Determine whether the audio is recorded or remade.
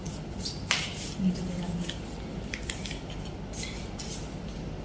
recorded